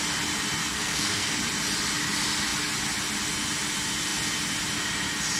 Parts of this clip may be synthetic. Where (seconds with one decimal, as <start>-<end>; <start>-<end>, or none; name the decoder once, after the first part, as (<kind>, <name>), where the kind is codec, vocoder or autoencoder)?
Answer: 0.6-1.3 (codec, SNAC)